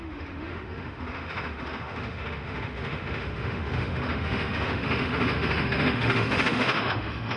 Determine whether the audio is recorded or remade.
remade